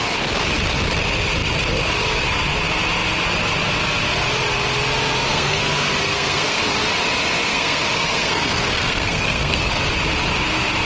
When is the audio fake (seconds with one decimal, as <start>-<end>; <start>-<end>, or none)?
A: 5.3-6.6; 7.5-9.7